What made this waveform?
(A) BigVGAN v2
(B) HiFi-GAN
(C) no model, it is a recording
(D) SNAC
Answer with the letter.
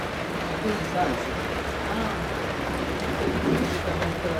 C